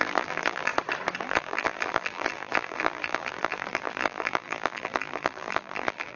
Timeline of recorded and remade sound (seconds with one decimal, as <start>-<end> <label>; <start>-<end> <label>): 0.0-0.7 remade; 0.7-1.2 recorded; 1.2-6.2 remade

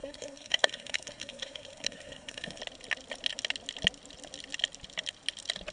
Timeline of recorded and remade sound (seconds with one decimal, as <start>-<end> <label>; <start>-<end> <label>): 0.0-2.6 remade; 2.6-5.7 recorded